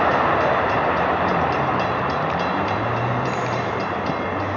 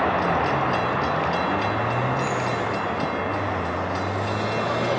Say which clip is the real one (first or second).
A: second